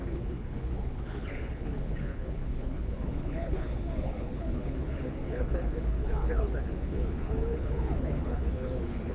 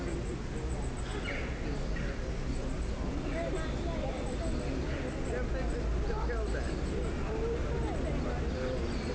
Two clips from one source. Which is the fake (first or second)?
first